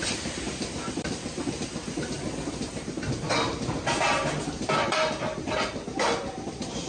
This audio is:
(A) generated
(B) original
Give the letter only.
B